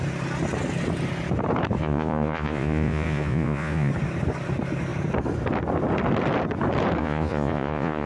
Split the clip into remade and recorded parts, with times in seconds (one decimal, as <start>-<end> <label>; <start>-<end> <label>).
0.0-1.8 recorded; 1.8-3.9 remade; 3.9-7.0 recorded; 7.0-8.1 remade